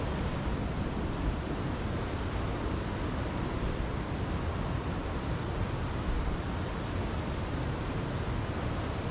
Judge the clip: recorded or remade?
recorded